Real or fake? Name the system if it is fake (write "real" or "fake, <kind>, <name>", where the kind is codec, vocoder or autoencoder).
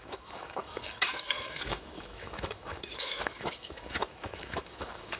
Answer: fake, autoencoder, DAC-VAE